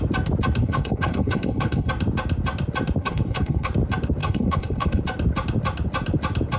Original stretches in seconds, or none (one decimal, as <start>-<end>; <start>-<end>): 0.0-0.6; 1.9-3.0; 3.7-4.2; 5.0-6.6

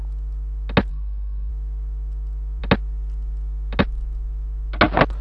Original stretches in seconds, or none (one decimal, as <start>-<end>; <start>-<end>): 0.0-0.9; 1.5-5.2

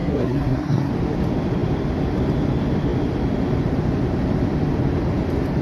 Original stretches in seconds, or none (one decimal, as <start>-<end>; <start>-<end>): 0.9-5.6

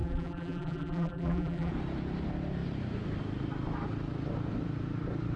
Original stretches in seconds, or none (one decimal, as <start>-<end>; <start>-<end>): 1.7-5.4

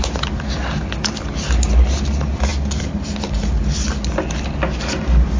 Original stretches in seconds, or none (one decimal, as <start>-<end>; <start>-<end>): 0.0-5.4